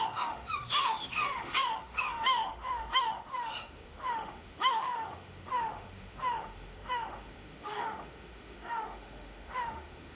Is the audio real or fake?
fake